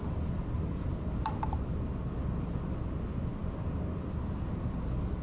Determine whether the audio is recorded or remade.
recorded